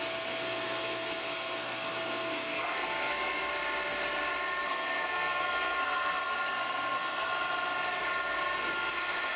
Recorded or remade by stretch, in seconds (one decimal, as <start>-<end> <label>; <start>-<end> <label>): 0.0-3.5 remade; 3.5-4.6 recorded; 4.6-7.3 remade; 7.3-8.9 recorded; 8.9-9.4 remade